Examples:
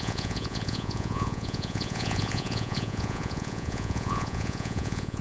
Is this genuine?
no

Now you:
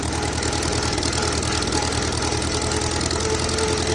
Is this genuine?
yes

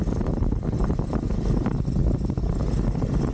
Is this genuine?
yes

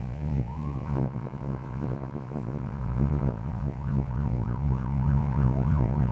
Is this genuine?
no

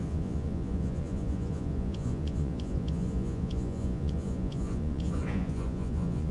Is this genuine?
no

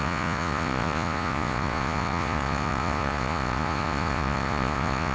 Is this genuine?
no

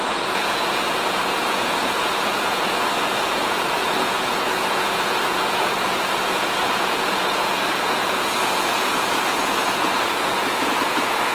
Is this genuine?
no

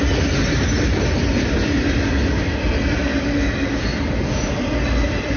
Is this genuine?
yes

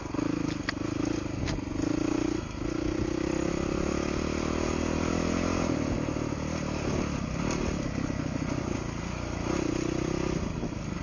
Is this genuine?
yes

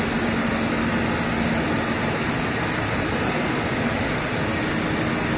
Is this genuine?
yes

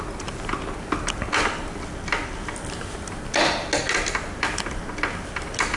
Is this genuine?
yes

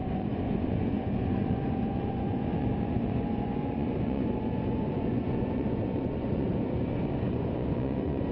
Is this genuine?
no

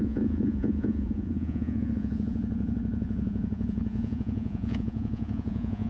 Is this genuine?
no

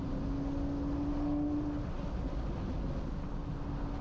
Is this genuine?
yes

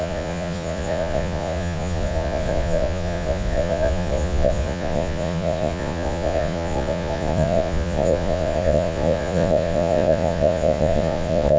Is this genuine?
no